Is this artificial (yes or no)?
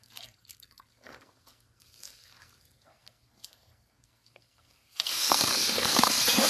yes